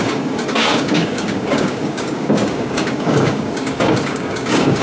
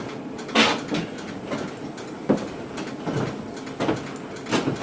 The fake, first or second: first